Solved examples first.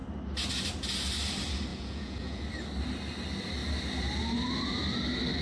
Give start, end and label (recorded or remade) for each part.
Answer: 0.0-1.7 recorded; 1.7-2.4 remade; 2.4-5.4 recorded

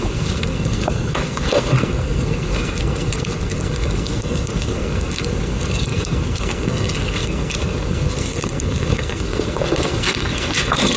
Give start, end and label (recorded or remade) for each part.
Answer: 0.0-11.0 remade

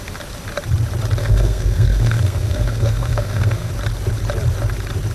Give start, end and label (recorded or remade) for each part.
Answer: 0.0-1.2 recorded; 1.2-3.7 remade; 3.7-5.1 recorded